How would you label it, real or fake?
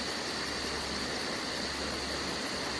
real